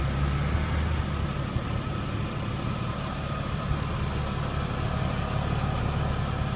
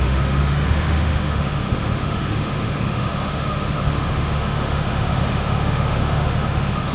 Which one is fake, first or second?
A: second